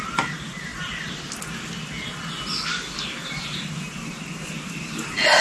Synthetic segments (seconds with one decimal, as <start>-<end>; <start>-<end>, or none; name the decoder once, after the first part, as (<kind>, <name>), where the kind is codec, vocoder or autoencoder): none